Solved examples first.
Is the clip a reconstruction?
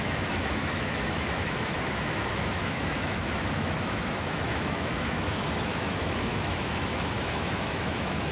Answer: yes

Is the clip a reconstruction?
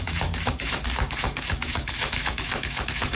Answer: yes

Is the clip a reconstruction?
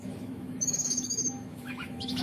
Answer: yes